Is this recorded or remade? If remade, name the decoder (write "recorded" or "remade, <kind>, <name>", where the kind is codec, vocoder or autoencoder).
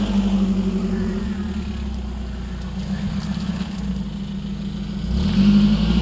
recorded